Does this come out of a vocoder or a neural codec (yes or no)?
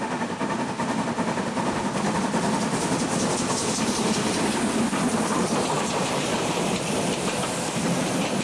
yes